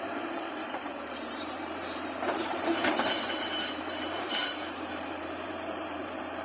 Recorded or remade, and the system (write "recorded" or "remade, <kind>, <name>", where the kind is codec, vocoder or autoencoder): remade, vocoder, BigVGAN v2